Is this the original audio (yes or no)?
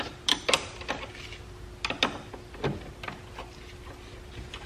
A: yes